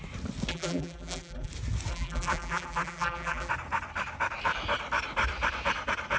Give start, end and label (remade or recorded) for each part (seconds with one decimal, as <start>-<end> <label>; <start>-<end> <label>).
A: 0.0-0.5 recorded; 0.5-1.5 remade; 1.5-1.9 recorded; 1.9-3.5 remade; 3.5-6.2 recorded